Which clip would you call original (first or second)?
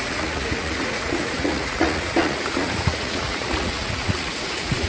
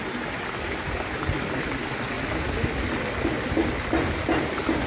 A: second